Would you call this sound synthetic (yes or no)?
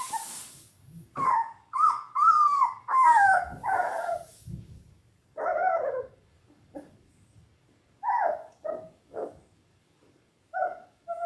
yes